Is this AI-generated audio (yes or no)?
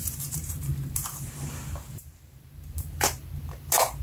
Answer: yes